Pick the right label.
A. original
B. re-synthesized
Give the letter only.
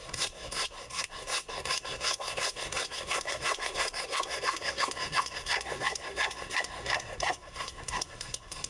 B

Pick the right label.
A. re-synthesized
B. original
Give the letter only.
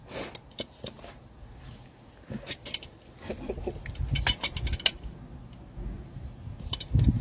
B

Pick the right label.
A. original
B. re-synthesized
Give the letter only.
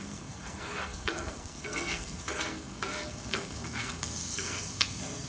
B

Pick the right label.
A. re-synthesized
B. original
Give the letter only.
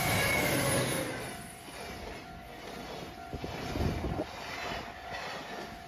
B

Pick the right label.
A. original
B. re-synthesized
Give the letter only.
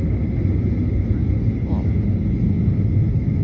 A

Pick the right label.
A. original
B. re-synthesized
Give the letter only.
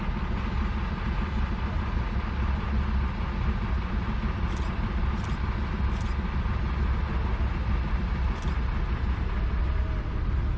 A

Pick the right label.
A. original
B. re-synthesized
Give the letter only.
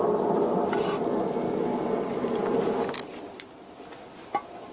A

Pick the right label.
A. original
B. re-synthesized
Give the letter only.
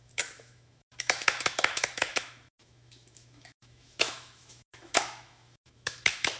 B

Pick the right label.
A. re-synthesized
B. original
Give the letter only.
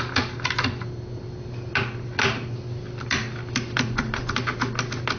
B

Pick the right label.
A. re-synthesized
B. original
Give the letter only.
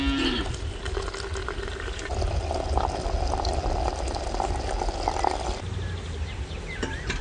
B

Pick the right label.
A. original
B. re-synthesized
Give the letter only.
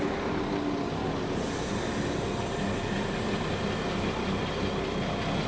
A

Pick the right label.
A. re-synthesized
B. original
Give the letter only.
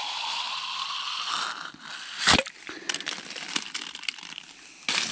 B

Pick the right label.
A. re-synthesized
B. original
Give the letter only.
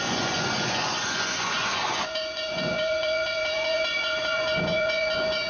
A